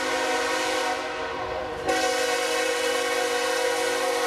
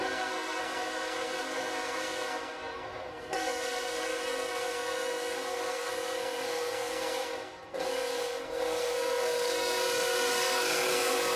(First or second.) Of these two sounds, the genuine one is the first